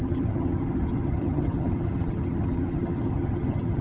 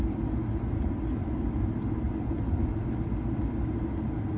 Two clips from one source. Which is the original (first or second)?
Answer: second